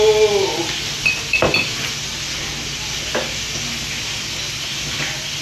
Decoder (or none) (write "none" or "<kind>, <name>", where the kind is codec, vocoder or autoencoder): none